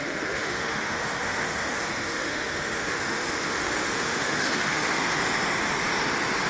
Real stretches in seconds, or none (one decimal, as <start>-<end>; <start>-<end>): 5.2-6.5